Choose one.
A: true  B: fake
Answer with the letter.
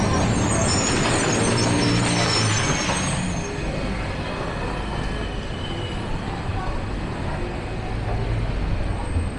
A